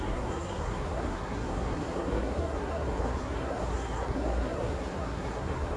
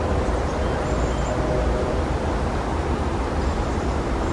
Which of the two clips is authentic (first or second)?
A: second